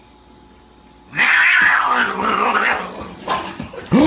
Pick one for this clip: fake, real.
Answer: real